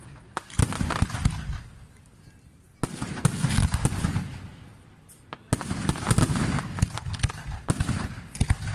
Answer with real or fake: real